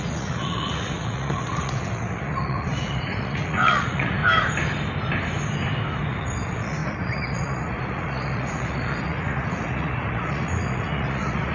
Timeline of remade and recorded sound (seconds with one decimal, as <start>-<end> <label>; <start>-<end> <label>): 0.0-4.2 remade; 4.2-6.1 recorded; 6.1-11.5 remade